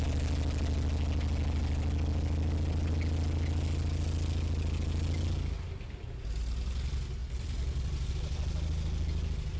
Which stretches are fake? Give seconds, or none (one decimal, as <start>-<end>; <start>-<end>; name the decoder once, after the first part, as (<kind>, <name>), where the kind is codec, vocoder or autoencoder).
7.2-8.1 (vocoder, BigVGAN v2)